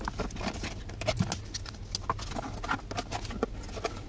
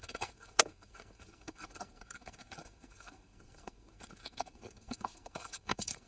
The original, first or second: first